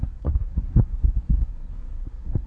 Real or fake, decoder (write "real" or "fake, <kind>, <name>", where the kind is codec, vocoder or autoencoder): fake, codec, SNAC